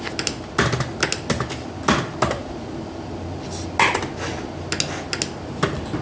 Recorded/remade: recorded